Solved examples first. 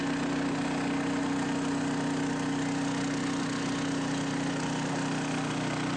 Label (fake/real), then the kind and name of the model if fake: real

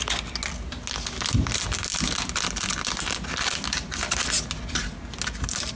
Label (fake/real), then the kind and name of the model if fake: real